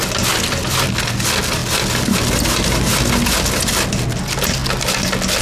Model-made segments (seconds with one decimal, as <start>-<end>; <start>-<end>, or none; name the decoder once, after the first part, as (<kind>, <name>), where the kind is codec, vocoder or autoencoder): none